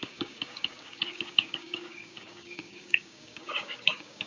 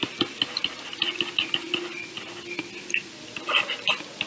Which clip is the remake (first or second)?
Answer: first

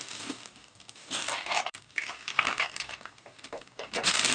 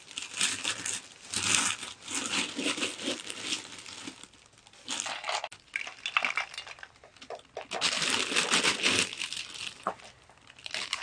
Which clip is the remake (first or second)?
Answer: first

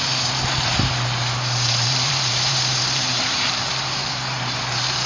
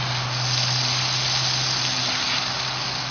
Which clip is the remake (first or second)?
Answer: first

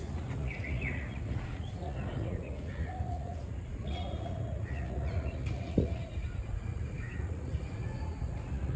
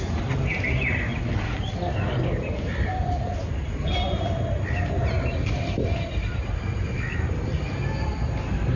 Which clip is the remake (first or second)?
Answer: first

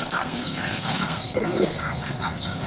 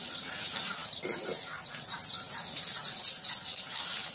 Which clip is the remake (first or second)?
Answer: first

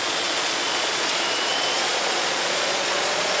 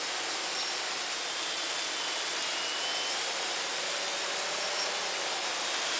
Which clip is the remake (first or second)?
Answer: first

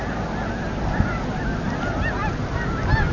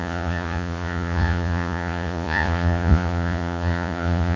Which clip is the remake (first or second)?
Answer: second